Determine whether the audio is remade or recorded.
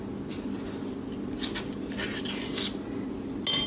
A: recorded